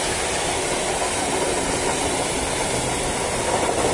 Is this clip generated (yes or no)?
no